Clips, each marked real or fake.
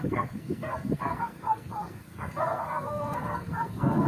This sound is fake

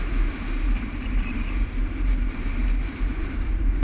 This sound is fake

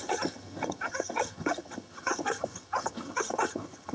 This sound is fake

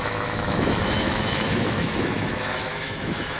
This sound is fake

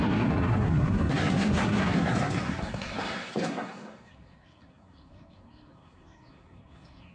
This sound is fake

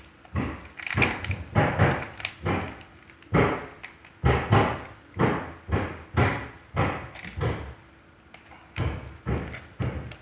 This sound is real